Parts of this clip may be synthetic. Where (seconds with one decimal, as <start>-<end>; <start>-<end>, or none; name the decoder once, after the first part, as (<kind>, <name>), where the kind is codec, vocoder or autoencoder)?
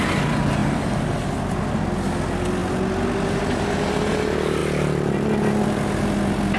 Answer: none